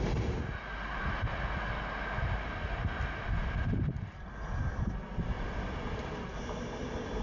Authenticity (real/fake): real